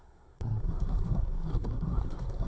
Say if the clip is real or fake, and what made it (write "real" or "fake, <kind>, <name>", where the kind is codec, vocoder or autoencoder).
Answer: fake, codec, SNAC